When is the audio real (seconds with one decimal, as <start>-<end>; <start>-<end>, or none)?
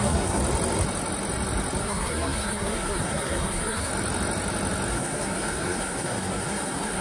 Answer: 0.4-1.8; 3.9-4.9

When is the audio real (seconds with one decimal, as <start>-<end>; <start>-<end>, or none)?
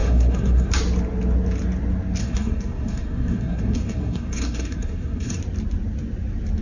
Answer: 0.7-2.2; 5.4-6.6